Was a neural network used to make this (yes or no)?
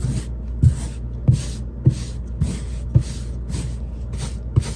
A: no